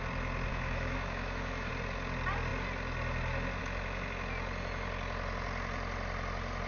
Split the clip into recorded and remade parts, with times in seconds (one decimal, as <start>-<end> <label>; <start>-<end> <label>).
0.0-0.5 recorded; 0.5-1.7 remade; 1.7-6.7 recorded